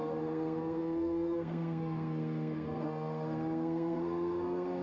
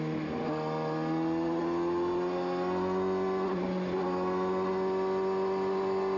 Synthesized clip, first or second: first